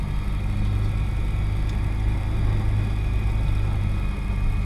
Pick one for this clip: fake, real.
real